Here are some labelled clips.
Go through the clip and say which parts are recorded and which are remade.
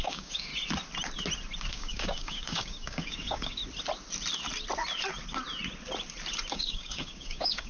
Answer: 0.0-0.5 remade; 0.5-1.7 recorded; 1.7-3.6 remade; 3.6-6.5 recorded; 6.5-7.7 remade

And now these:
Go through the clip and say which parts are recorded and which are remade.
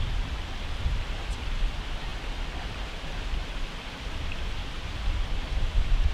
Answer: 0.0-6.1 recorded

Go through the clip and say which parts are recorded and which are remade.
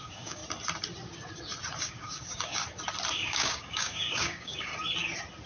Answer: 0.0-0.4 remade; 0.4-1.8 recorded; 1.8-2.6 remade; 2.6-3.1 recorded; 3.1-4.7 remade; 4.7-5.5 recorded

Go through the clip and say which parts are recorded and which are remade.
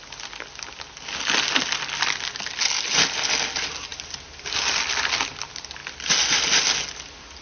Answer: 0.0-3.9 recorded; 3.9-4.8 remade; 4.8-7.4 recorded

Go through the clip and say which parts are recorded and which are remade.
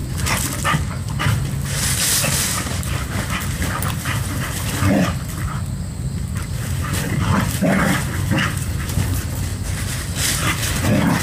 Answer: 0.0-2.6 recorded; 2.6-7.6 remade; 7.6-8.5 recorded; 8.5-11.2 remade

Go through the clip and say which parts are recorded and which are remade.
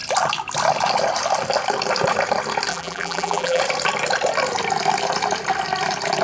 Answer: 0.0-2.7 recorded; 2.7-3.6 remade; 3.6-6.2 recorded